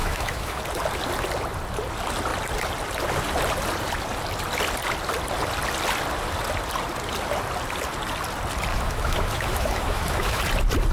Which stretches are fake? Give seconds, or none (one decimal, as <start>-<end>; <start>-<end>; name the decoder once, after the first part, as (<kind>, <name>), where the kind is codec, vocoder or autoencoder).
0.0-0.6 (autoencoder, DAC-VAE); 8.7-10.4